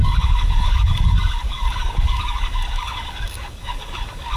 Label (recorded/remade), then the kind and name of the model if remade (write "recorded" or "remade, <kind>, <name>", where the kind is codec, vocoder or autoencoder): remade, codec, DAC